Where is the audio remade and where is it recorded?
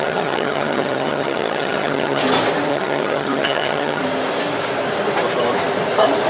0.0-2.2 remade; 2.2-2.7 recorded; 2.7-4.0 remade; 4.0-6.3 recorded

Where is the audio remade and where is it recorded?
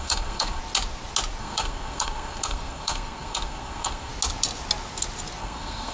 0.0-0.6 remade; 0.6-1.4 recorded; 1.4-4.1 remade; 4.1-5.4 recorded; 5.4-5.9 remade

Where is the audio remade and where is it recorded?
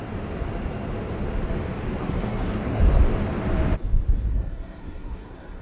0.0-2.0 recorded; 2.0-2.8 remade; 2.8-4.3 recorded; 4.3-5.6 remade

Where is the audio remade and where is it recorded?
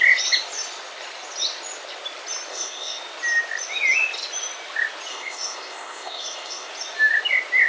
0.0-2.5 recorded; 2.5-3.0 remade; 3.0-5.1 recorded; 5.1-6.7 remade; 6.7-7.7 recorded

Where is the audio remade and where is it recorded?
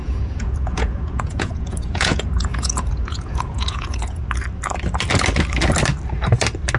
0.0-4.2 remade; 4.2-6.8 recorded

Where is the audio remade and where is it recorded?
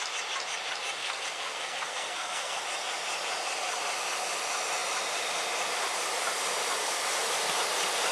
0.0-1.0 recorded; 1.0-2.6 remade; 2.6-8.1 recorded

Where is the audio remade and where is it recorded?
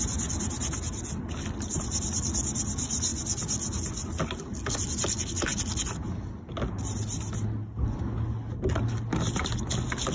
0.0-10.1 recorded